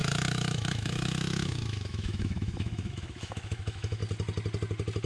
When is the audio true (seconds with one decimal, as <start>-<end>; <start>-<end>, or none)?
4.0-5.1